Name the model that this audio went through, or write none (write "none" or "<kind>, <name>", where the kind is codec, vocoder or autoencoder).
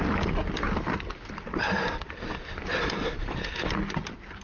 none